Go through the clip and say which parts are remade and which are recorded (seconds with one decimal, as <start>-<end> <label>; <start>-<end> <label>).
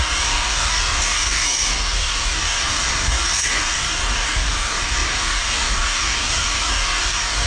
0.0-7.5 remade